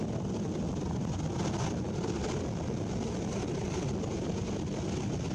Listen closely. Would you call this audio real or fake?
real